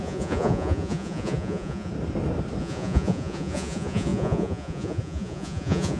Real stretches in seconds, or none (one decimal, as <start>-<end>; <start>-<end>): 1.9-2.6